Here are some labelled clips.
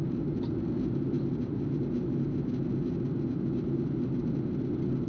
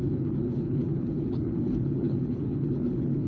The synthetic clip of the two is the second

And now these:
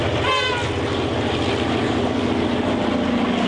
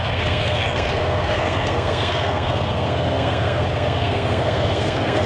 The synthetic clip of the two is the second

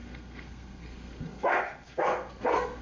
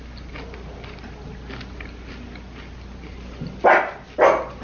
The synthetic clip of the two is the first